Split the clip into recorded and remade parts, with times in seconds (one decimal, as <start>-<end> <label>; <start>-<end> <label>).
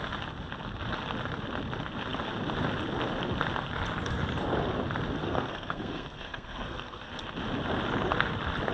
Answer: 0.0-5.2 recorded; 5.2-7.1 remade; 7.1-8.7 recorded